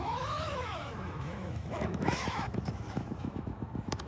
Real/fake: fake